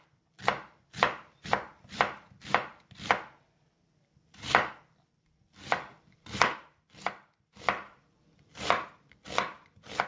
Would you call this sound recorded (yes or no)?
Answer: no